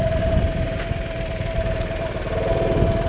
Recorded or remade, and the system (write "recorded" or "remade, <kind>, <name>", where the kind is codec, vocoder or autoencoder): recorded